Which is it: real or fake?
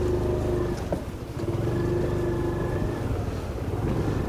real